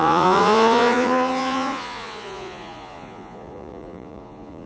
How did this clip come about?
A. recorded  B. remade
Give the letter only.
B